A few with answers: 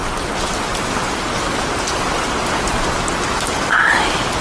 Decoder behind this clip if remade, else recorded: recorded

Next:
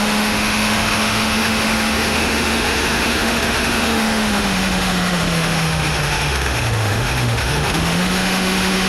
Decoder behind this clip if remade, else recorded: remade, autoencoder, DAC-VAE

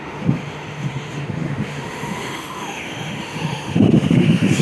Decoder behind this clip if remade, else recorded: remade, autoencoder, DAC-VAE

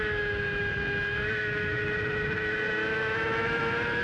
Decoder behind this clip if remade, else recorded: remade, autoencoder, DAC-VAE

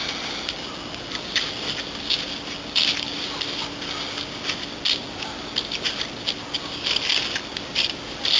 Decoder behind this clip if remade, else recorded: recorded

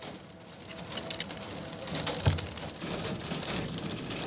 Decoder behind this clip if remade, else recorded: recorded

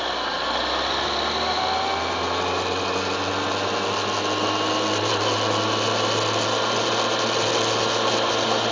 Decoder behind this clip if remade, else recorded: recorded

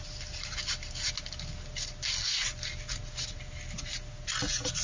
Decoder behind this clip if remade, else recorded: recorded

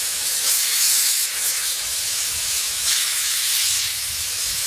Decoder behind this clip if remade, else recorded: remade, autoencoder, DAC-VAE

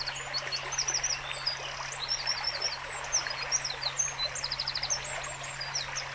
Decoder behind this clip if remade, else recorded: recorded